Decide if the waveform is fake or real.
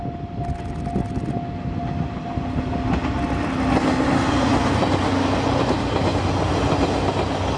real